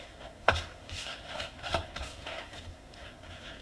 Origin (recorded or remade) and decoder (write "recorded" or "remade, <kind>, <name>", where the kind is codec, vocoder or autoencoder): remade, codec, SNAC